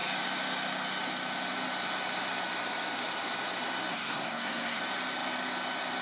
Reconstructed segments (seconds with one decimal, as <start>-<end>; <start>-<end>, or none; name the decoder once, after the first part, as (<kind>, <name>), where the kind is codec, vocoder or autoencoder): 3.9-4.8 (codec, SNAC)